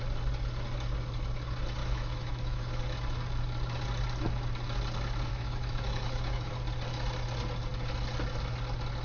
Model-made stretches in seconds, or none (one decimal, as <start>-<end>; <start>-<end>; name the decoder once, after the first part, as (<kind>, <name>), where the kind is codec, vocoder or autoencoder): 1.8-2.8 (autoencoder, DAC-VAE); 5.3-6.5